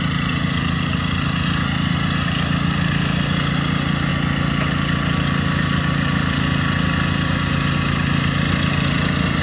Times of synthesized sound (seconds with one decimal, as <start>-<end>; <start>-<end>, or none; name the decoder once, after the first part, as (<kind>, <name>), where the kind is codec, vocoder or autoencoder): none